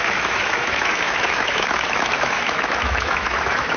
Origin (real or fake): fake